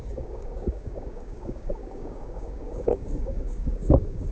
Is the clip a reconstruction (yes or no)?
yes